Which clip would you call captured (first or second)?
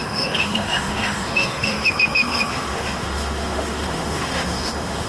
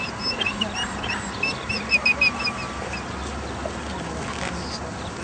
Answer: second